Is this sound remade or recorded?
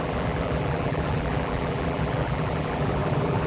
remade